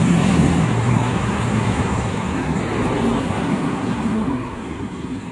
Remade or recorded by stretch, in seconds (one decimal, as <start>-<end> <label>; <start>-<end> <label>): 0.0-2.6 remade; 2.6-3.2 recorded; 3.2-5.3 remade